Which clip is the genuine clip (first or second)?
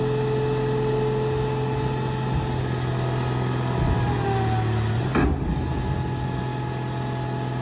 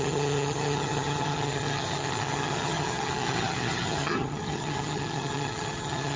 first